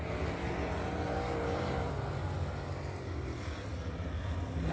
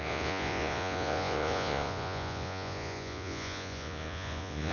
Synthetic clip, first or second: second